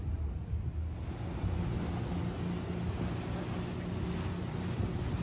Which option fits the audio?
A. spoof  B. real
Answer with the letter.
B